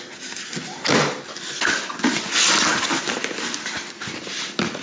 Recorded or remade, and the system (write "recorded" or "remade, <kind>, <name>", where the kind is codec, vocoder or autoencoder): recorded